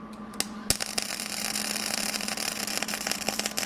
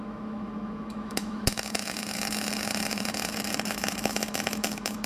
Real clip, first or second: first